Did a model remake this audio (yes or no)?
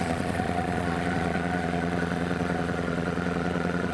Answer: yes